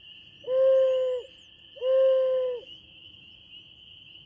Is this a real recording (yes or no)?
yes